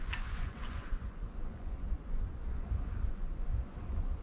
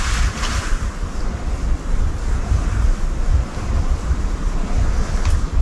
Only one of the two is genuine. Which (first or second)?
second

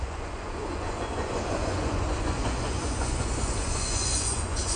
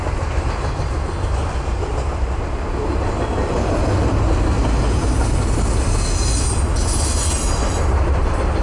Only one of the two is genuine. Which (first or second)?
second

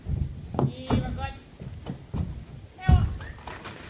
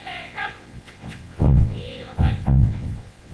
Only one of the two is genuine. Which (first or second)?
first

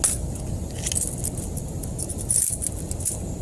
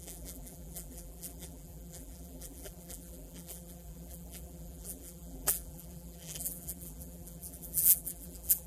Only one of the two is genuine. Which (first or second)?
first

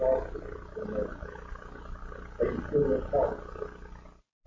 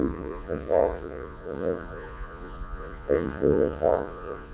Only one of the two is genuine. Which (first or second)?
first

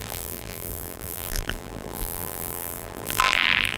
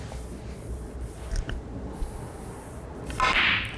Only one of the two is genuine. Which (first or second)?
second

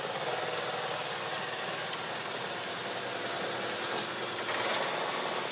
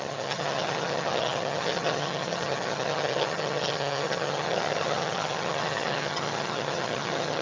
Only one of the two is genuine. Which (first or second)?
first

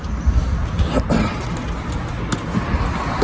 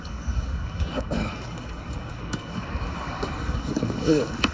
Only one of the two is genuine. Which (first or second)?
first